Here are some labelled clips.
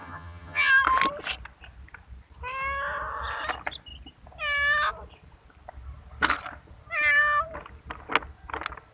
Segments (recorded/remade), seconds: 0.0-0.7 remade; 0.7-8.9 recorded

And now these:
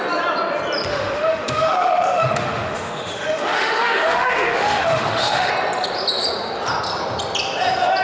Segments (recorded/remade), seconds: 0.0-0.9 recorded; 0.9-5.5 remade; 5.5-8.0 recorded

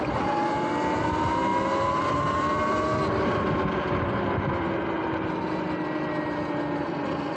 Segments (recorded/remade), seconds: 0.0-7.4 recorded

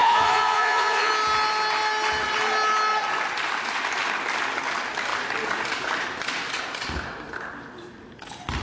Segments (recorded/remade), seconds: 0.0-1.1 remade; 1.1-8.6 recorded

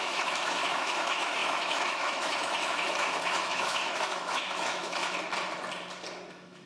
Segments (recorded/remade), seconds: 0.0-5.0 remade; 5.0-6.3 recorded; 6.3-6.7 remade

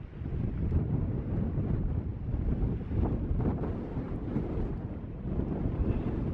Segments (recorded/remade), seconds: 0.0-6.3 recorded

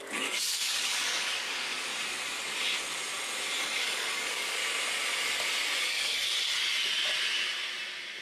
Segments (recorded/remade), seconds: 0.0-1.9 remade; 1.9-3.6 recorded; 3.6-4.6 remade; 4.6-5.8 recorded; 5.8-6.3 remade; 6.3-8.2 recorded

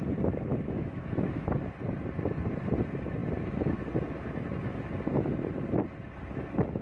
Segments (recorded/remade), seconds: 0.0-0.5 recorded; 0.5-1.5 remade; 1.5-6.8 recorded